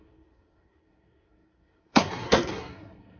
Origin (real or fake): fake